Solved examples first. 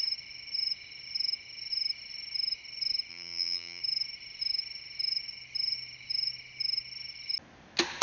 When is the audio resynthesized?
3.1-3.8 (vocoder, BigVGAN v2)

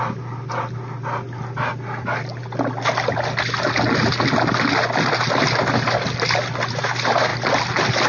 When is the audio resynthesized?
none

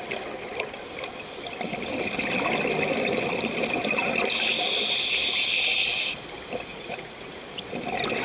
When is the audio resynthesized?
6.7-7.4 (vocoder, Vocos)